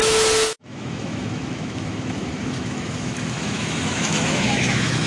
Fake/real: fake